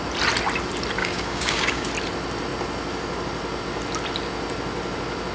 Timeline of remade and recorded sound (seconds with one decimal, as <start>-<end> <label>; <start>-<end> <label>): 0.0-1.0 recorded; 1.0-1.9 remade; 1.9-5.3 recorded